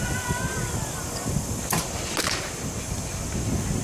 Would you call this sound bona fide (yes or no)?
yes